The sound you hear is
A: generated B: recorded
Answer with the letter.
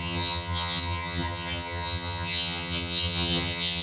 A